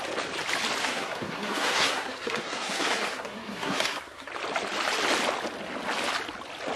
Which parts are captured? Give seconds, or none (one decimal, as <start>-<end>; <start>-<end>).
0.0-0.8; 4.3-6.8